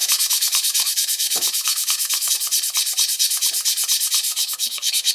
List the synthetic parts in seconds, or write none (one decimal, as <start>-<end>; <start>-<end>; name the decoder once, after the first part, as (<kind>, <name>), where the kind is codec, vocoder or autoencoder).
0.0-2.3 (autoencoder, DAC-VAE); 4.3-5.1